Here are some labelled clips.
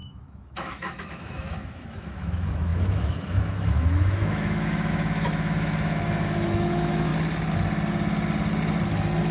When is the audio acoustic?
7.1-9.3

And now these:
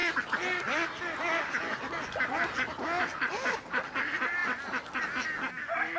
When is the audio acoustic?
0.0-6.0

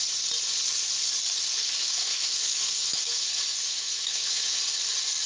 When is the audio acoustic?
0.0-1.8; 4.6-5.3